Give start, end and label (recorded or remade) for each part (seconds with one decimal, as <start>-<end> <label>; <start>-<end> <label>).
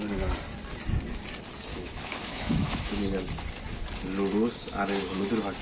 0.0-1.7 recorded; 1.7-3.0 remade; 3.0-5.6 recorded